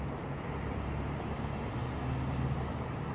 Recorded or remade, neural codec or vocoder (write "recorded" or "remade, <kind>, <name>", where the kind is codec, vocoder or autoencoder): recorded